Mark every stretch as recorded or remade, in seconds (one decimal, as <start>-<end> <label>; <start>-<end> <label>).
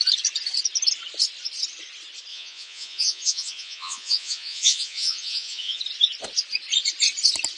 0.0-2.3 recorded; 2.3-5.8 remade; 5.8-7.6 recorded